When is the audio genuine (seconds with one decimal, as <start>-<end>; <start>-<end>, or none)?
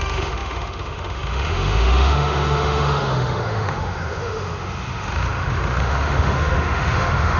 none